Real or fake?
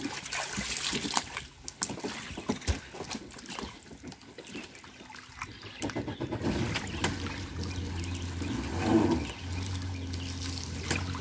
real